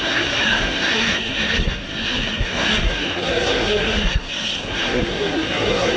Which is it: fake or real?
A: fake